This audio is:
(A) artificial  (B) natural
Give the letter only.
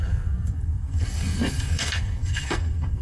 A